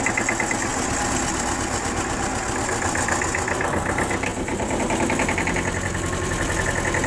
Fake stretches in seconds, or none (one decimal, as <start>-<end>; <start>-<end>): 4.3-4.8